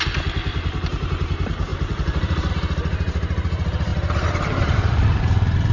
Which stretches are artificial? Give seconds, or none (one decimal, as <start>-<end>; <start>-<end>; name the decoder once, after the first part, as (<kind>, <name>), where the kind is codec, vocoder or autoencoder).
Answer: 1.7-2.5 (vocoder, BigVGAN v2); 3.9-5.2